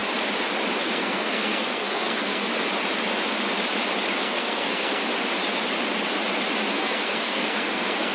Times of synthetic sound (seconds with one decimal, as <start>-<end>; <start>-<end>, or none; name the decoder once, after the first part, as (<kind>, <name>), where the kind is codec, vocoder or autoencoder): 0.8-2.5 (codec, SNAC); 4.2-5.0; 6.7-8.1

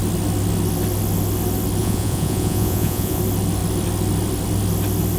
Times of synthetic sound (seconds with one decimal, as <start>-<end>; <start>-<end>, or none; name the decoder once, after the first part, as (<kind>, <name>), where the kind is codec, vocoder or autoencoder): 1.8-3.2 (vocoder, Vocos)

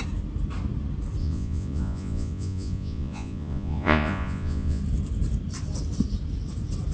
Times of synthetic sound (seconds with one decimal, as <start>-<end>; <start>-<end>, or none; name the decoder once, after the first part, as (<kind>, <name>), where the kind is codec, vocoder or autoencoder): 1.2-4.8 (vocoder, Vocos)

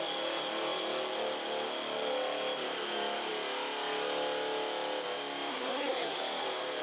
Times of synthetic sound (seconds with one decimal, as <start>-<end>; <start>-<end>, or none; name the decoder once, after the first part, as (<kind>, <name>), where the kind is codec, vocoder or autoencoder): 5.5-6.2 (codec, SNAC)